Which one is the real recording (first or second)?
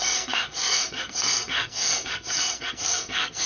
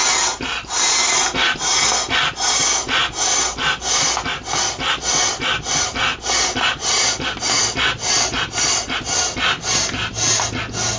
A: second